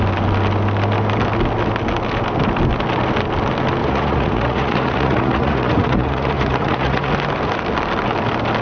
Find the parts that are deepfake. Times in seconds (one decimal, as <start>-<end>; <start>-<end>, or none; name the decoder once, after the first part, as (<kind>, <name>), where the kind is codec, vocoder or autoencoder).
3.8-7.1 (vocoder, Vocos)